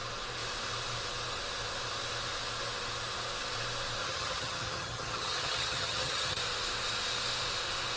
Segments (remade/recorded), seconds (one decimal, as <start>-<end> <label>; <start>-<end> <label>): 0.0-4.0 recorded; 4.0-6.4 remade; 6.4-8.0 recorded